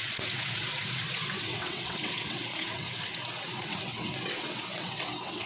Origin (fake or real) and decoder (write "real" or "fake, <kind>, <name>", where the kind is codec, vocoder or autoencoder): fake, vocoder, WaveNeXt